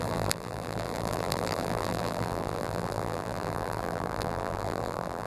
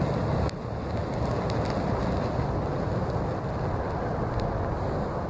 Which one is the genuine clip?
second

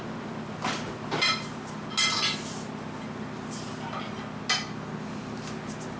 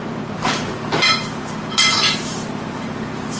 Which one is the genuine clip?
first